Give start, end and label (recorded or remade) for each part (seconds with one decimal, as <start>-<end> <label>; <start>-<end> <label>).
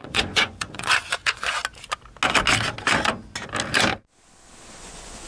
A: 0.0-1.6 remade; 1.6-4.8 recorded; 4.8-5.3 remade